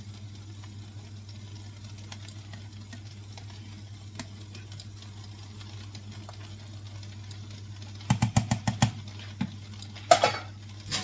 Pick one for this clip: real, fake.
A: real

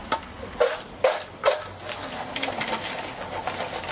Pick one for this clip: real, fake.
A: real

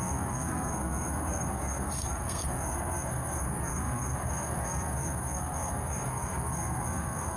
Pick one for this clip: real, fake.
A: fake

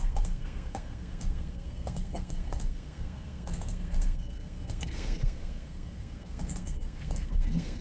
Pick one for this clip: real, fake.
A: fake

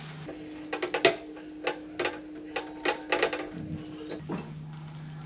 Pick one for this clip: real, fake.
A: real